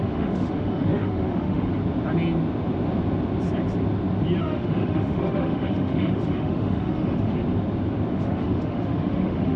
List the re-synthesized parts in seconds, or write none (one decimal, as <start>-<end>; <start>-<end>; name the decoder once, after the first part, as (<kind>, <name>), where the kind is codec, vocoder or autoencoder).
0.0-1.7 (autoencoder, DAC-VAE); 4.4-7.3; 8.1-9.6